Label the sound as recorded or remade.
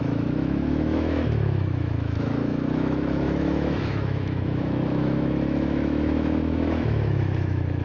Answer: remade